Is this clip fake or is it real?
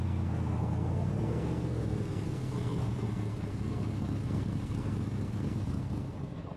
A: fake